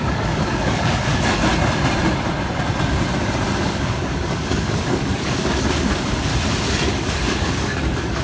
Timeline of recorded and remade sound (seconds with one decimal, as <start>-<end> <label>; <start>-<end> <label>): 0.0-1.5 remade; 1.5-3.6 recorded; 3.6-6.3 remade; 6.3-6.9 recorded; 6.9-8.2 remade